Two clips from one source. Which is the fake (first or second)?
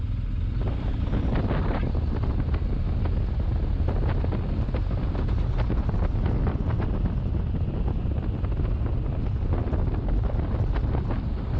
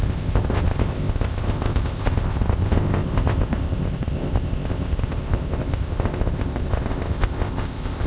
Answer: second